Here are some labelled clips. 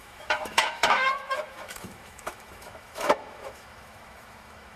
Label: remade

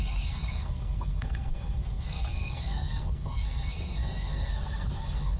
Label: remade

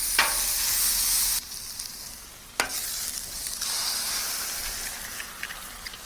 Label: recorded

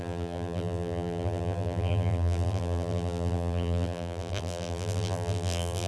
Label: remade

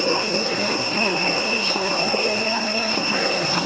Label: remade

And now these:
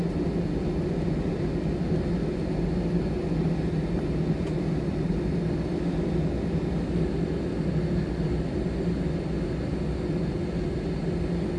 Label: recorded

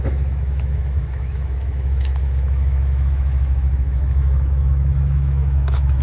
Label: remade